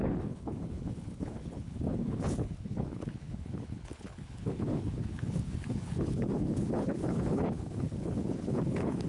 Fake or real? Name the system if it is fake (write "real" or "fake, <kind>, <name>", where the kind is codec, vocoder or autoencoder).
fake, codec, HILCodec